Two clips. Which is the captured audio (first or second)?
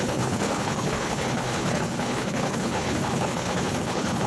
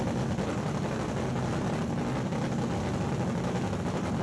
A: second